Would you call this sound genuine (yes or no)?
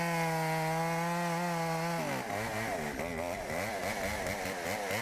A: yes